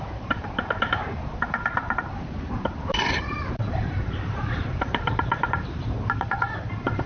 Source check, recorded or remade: remade